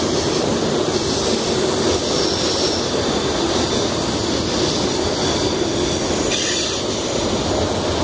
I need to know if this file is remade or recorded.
recorded